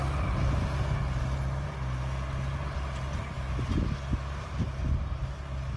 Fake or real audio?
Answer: real